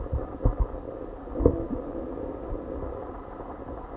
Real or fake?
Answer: real